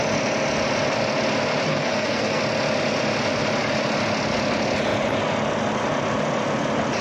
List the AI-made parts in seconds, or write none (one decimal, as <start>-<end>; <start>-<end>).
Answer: 1.7-2.4